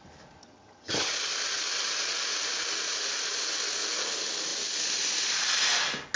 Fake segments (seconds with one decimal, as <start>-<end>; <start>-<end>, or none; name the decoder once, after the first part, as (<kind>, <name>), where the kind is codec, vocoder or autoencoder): 0.4-1.1 (vocoder, HiFi-GAN)